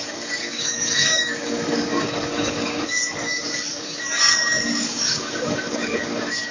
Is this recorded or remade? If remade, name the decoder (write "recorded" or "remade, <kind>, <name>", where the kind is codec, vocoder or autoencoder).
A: remade, codec, DAC